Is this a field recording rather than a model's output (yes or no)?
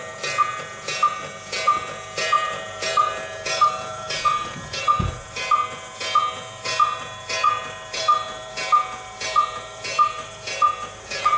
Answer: no